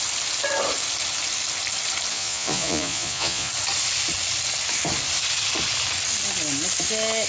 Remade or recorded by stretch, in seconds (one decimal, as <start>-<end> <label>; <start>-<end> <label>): 0.0-2.1 recorded; 2.1-3.5 remade; 3.5-7.3 recorded